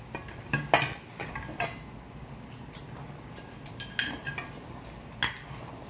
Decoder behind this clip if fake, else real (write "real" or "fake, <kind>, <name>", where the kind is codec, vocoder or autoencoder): real